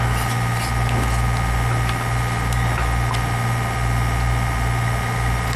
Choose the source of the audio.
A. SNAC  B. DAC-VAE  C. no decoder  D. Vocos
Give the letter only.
C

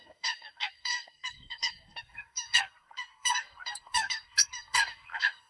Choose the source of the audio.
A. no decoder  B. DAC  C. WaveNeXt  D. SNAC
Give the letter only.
D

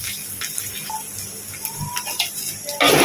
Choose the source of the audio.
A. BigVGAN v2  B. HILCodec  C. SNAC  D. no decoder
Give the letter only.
D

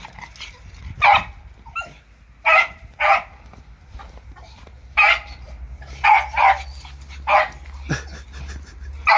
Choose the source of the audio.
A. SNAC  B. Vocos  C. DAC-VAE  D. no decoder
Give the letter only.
D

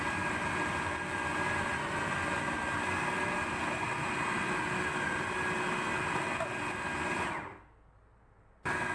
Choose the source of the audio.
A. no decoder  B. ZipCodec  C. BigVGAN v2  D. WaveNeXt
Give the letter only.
A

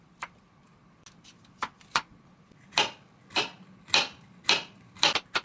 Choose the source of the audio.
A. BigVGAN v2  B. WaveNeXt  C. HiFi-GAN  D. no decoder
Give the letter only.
D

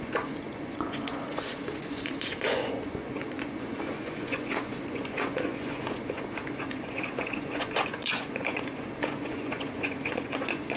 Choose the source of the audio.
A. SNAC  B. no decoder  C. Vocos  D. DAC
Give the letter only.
C